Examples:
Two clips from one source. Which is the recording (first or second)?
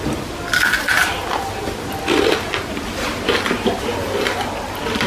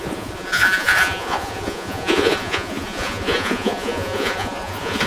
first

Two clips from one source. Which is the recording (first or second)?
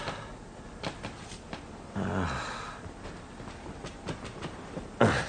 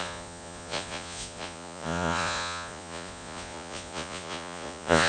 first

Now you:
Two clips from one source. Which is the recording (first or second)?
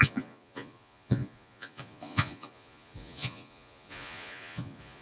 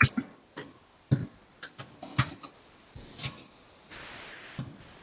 second